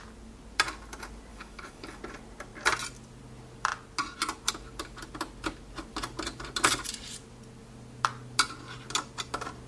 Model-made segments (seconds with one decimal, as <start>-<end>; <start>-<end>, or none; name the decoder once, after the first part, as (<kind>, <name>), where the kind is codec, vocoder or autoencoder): 1.3-2.0 (codec, DAC)